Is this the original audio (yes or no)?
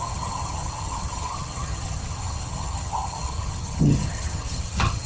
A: no